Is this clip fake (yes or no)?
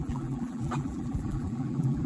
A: yes